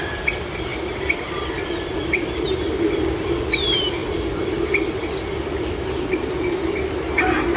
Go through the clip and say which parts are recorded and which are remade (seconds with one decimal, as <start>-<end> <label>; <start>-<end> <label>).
0.0-4.0 remade; 4.0-5.9 recorded; 5.9-7.6 remade